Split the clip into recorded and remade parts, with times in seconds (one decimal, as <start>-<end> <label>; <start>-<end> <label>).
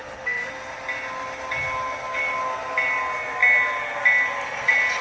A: 0.0-0.5 remade; 0.5-5.0 recorded